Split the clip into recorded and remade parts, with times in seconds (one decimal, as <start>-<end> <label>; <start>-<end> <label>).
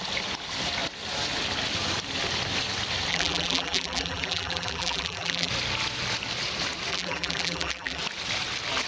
0.0-3.1 recorded; 3.1-5.5 remade; 5.5-6.9 recorded; 6.9-8.0 remade; 8.0-8.9 recorded